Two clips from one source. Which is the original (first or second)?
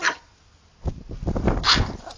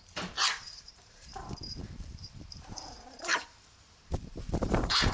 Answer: first